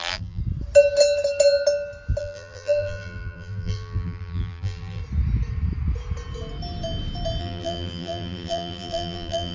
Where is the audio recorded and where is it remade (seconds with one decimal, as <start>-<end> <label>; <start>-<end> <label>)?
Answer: 0.0-0.4 remade; 0.4-2.2 recorded; 2.2-5.0 remade; 5.0-7.4 recorded; 7.4-9.5 remade